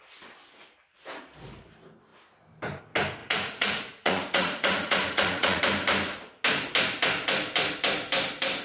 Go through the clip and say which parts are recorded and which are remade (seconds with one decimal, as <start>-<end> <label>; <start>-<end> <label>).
0.0-3.2 recorded; 3.2-5.6 remade; 5.6-8.6 recorded